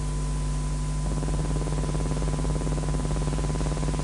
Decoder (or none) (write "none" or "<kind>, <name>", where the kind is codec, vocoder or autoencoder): none